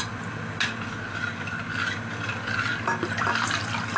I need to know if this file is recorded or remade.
recorded